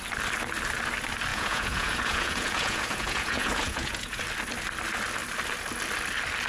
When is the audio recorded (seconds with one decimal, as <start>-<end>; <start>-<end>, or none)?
0.0-1.3; 4.2-6.5